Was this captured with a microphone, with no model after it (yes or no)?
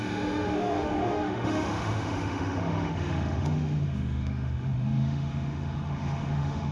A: no